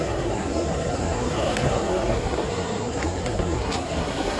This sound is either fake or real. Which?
fake